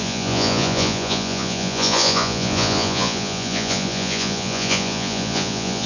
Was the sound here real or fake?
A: fake